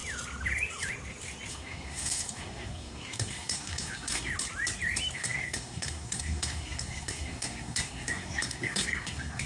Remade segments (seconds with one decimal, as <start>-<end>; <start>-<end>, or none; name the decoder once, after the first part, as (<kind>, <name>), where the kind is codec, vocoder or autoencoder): 1.5-4.3 (codec, SNAC); 5.1-9.5